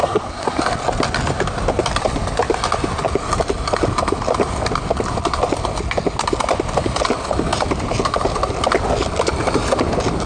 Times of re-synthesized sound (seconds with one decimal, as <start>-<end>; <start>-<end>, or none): 0.0-0.6